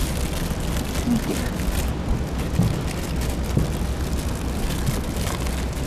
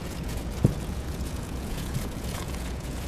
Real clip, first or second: first